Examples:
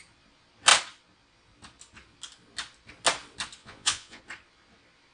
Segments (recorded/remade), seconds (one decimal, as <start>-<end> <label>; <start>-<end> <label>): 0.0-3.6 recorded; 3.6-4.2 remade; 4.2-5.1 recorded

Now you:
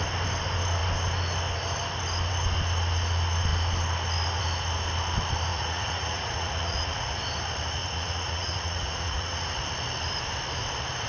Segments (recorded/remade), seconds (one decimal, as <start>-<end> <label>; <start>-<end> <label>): 0.0-5.5 recorded; 5.5-7.2 remade; 7.2-7.8 recorded; 7.8-9.6 remade; 9.6-11.1 recorded

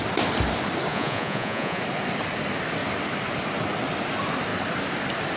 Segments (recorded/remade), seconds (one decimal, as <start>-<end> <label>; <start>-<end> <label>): 0.0-0.9 recorded; 0.9-1.8 remade; 1.8-5.4 recorded